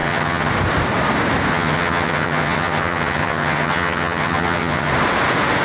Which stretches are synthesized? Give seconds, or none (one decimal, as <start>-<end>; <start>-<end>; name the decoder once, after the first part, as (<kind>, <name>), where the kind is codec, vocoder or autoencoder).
0.0-0.5 (vocoder, HiFi-GAN); 1.5-4.9